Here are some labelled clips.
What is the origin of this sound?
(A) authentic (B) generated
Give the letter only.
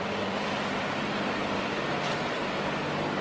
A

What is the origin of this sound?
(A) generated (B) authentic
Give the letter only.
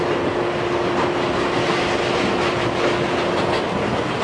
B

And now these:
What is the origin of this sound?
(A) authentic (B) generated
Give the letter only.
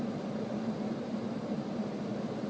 A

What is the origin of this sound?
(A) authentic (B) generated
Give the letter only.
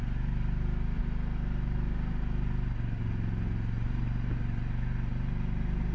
A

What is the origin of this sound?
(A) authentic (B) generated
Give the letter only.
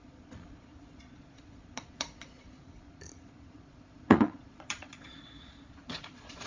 B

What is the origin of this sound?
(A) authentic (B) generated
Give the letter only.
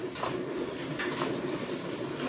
A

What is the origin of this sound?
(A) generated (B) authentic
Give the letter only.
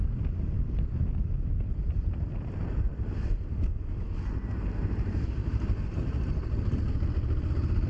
B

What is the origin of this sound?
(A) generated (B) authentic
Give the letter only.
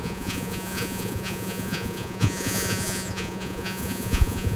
A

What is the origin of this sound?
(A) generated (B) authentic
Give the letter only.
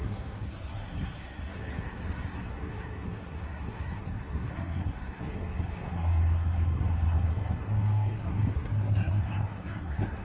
A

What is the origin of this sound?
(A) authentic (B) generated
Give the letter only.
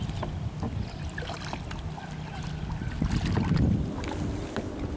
A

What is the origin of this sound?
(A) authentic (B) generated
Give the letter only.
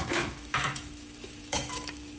B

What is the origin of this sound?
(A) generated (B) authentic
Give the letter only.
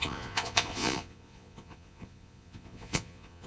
A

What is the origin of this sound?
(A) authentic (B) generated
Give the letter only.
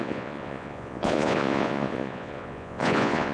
B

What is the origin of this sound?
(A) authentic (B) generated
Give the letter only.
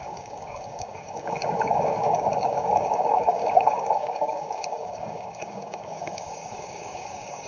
B